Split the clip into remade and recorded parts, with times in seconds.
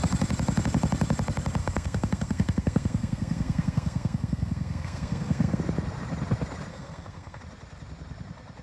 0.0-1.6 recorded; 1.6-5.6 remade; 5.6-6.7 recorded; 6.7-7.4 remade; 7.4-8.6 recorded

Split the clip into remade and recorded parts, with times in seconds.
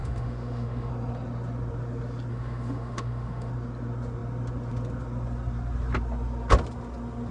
0.0-0.9 remade; 0.9-2.3 recorded; 2.3-3.5 remade; 3.5-7.3 recorded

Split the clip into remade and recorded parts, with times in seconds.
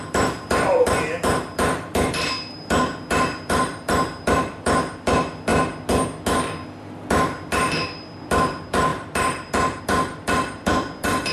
0.0-5.5 remade; 5.5-7.1 recorded; 7.1-11.3 remade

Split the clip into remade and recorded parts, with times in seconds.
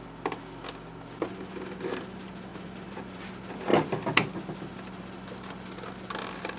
0.0-2.5 recorded; 2.5-3.3 remade; 3.3-6.6 recorded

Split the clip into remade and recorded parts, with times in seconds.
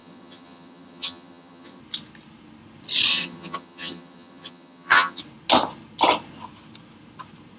0.0-1.8 remade; 1.8-3.1 recorded; 3.1-5.2 remade; 5.2-7.6 recorded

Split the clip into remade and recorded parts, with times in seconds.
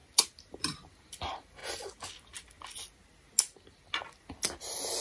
0.0-5.0 recorded